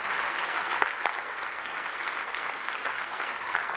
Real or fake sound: fake